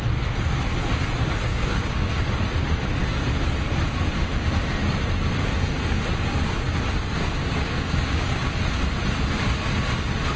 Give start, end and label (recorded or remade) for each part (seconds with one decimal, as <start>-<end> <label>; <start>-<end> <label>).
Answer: 0.0-1.5 recorded; 1.5-2.1 remade; 2.1-7.4 recorded; 7.4-8.5 remade; 8.5-10.4 recorded